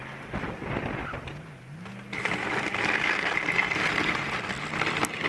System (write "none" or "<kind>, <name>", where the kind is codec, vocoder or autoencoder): none